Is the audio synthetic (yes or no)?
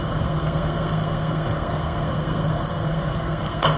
yes